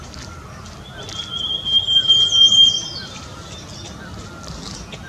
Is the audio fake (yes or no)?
no